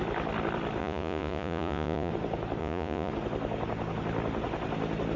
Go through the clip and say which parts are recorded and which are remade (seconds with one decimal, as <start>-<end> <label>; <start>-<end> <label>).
0.0-0.8 recorded; 0.8-2.1 remade; 2.1-2.6 recorded; 2.6-3.1 remade; 3.1-5.2 recorded